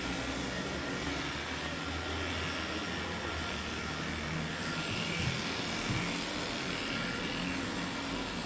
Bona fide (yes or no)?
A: yes